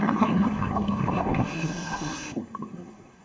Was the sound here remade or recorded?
remade